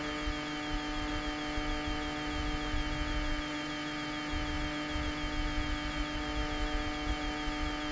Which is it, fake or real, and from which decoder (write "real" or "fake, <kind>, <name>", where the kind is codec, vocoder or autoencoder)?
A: real